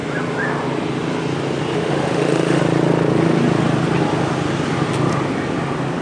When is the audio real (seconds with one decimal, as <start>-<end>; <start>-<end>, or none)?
0.0-1.7; 2.6-6.0

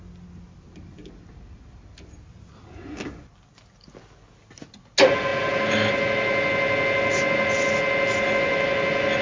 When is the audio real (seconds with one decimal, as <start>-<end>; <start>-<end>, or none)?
0.0-9.2

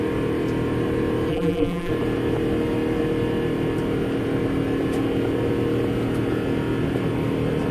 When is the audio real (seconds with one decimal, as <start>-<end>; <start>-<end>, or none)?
0.0-1.3; 1.9-7.7

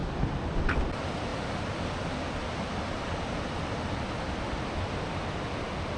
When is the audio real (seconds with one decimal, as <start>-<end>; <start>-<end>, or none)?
0.9-6.0